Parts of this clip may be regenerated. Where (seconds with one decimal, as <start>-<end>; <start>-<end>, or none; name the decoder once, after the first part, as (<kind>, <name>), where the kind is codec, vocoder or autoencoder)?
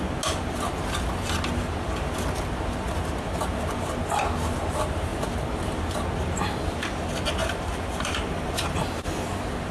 7.4-8.8 (vocoder, BigVGAN v2)